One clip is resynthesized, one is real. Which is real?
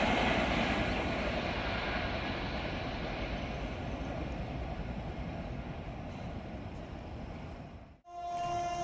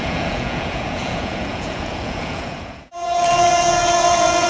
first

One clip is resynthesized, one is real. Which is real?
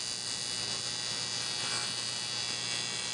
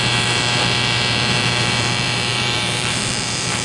first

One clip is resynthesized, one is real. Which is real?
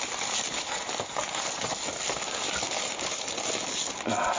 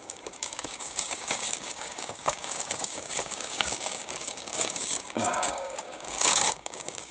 first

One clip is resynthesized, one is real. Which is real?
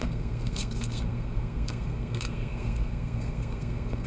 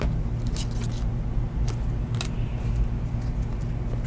second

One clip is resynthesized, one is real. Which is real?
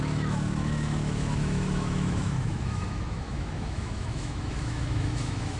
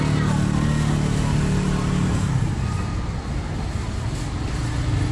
second